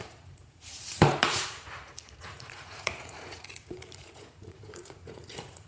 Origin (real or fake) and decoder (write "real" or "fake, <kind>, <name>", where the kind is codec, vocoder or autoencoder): fake, vocoder, Vocos